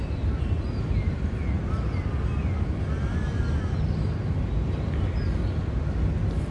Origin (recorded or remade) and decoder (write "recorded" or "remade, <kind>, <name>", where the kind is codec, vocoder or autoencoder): recorded